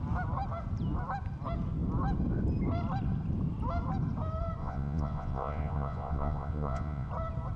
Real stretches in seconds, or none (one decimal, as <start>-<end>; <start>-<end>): 0.0-4.6; 7.1-7.6